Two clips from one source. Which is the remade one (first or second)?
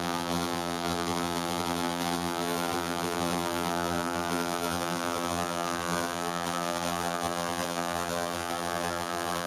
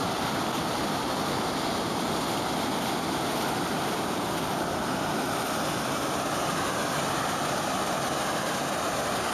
first